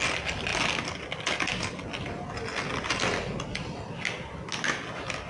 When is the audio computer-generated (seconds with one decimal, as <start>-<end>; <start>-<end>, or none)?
none